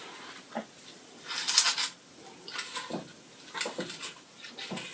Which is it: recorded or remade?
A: recorded